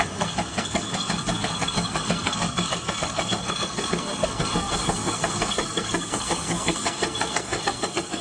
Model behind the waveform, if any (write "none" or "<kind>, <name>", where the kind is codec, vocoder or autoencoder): codec, SNAC